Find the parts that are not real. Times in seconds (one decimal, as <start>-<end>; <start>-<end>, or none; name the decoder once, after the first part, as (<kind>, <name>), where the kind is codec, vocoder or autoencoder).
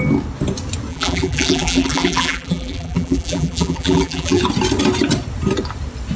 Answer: 0.9-4.4 (vocoder, BigVGAN v2)